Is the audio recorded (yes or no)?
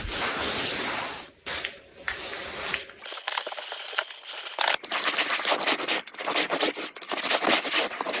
yes